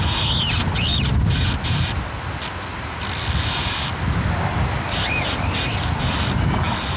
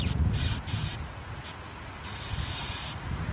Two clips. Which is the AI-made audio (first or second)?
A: second